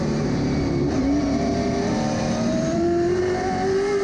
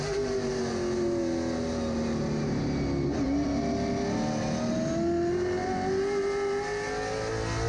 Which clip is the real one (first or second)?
second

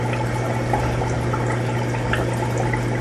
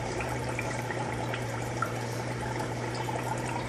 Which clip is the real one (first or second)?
first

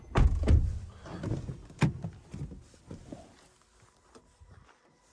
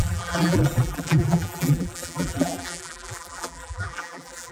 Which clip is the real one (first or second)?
first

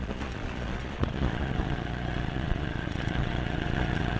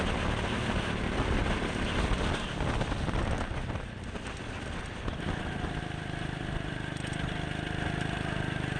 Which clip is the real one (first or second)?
second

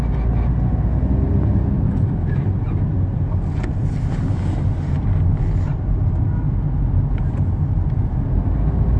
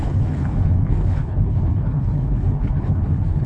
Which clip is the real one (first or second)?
first